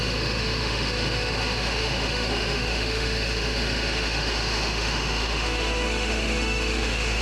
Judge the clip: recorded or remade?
remade